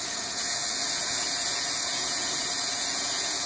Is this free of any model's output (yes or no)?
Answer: no